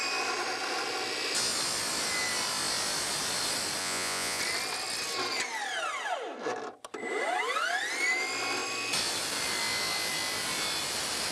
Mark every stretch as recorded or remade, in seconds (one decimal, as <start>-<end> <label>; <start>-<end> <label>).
0.0-3.8 recorded; 3.8-4.4 remade; 4.4-11.3 recorded